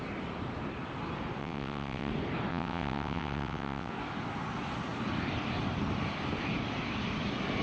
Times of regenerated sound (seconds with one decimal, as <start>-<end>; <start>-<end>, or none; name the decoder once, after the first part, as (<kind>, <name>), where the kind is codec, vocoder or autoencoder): 1.4-2.1 (vocoder, WaveNeXt); 2.5-3.9